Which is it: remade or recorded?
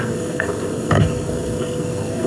remade